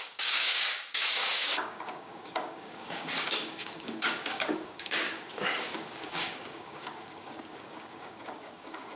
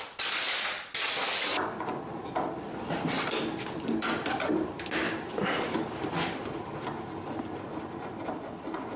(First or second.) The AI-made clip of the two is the first